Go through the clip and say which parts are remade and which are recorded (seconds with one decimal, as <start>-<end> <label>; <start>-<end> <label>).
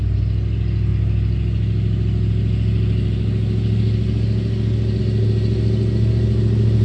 0.0-6.8 recorded